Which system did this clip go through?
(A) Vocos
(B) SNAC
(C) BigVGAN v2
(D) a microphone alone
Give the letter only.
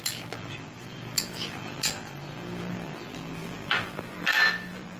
C